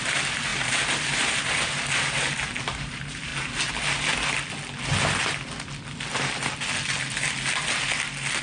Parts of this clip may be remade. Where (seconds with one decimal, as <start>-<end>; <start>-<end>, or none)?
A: 0.0-3.3